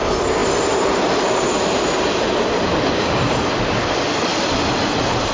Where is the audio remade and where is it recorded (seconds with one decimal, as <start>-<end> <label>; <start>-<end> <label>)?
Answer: 0.0-0.4 recorded; 0.4-3.5 remade; 3.5-4.3 recorded; 4.3-5.3 remade